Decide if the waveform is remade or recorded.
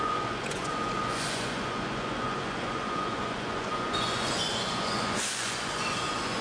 remade